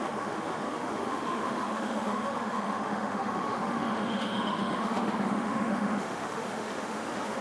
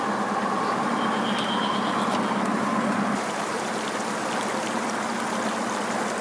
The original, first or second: second